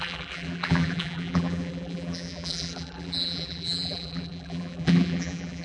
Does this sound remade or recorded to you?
remade